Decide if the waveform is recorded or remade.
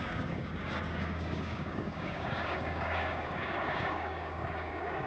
remade